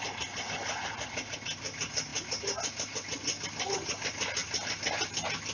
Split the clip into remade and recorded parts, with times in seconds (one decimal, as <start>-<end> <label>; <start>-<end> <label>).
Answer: 0.0-5.5 recorded